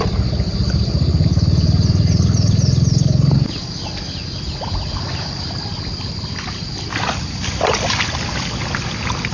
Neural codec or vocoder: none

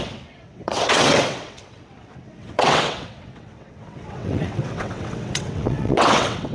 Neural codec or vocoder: vocoder, WaveNeXt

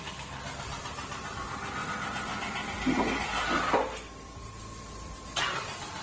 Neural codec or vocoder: none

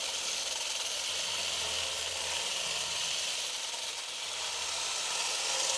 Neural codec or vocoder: none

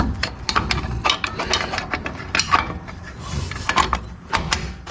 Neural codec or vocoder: none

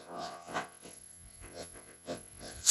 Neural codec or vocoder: vocoder, WaveNeXt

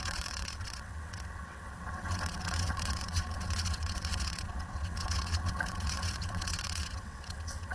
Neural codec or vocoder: vocoder, WaveNeXt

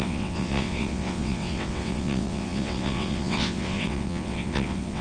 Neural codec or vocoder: vocoder, WaveNeXt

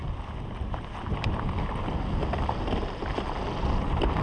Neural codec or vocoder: none